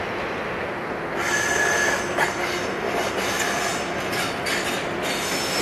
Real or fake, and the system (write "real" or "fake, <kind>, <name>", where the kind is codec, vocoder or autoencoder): real